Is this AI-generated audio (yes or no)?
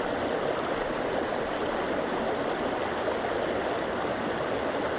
no